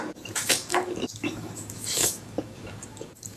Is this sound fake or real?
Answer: fake